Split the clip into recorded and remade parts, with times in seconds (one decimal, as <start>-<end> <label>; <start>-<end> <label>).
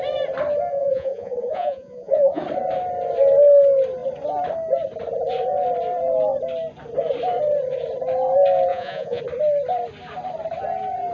0.0-0.7 recorded; 0.7-2.4 remade; 2.4-8.7 recorded; 8.7-9.2 remade; 9.2-11.1 recorded